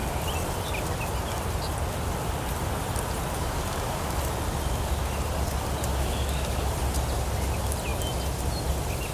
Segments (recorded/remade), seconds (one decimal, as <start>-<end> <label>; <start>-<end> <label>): 0.0-3.3 recorded; 3.3-4.2 remade; 4.2-5.9 recorded; 5.9-6.7 remade; 6.7-9.1 recorded